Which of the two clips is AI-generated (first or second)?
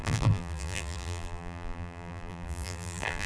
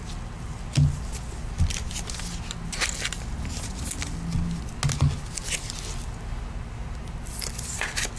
first